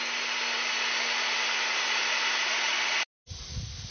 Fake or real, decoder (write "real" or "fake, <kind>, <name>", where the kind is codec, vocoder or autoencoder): real